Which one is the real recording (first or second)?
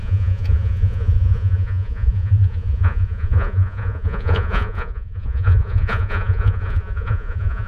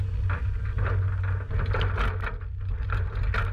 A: second